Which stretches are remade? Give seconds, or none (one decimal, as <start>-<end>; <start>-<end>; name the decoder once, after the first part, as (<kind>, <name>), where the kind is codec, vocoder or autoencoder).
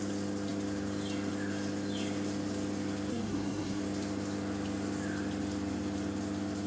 3.1-3.8 (codec, SNAC)